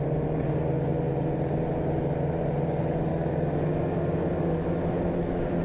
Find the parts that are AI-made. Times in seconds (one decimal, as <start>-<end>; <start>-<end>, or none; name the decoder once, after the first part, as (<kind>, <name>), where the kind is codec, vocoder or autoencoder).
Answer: 3.1-5.6 (autoencoder, DAC-VAE)